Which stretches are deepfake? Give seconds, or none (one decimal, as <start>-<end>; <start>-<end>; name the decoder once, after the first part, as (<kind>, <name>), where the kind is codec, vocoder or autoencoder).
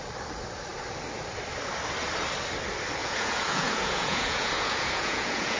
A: 3.0-5.6 (vocoder, Vocos)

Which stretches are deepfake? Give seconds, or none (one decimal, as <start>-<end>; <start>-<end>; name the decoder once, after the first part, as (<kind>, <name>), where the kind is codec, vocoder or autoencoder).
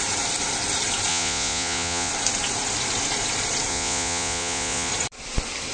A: 1.1-2.1 (vocoder, Vocos); 3.7-4.9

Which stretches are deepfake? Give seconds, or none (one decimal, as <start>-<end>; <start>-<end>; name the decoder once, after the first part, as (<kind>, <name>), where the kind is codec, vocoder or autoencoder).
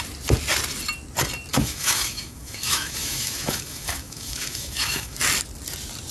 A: 1.5-5.2 (autoencoder, DAC-VAE)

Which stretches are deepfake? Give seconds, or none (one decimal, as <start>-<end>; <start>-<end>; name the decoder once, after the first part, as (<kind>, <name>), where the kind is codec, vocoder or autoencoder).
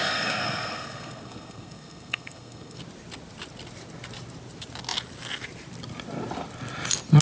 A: 0.0-2.8 (codec, SNAC)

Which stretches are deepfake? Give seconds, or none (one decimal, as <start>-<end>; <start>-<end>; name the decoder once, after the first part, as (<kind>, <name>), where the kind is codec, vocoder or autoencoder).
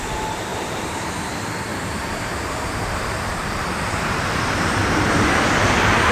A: 0.5-1.1 (vocoder, BigVGAN v2); 1.7-5.3